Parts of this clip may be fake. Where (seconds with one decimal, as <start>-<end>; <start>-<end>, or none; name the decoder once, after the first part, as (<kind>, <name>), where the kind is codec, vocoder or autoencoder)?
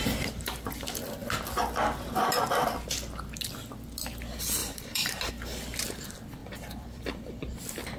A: 4.6-5.3 (vocoder, BigVGAN v2); 6.4-7.6